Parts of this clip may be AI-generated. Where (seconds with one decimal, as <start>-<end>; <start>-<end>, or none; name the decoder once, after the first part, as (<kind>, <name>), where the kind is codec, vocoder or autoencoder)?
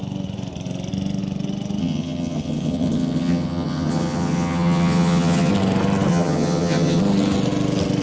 1.8-5.5 (vocoder, HiFi-GAN); 6.1-7.0